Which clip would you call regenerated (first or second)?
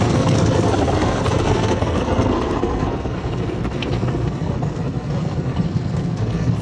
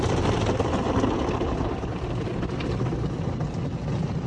first